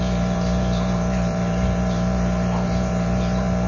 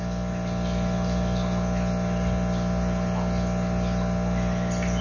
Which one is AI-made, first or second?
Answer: first